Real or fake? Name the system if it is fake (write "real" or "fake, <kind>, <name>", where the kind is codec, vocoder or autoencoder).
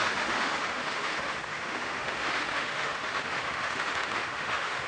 fake, autoencoder, DAC-VAE